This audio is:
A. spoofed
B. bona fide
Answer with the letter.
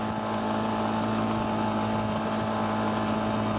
B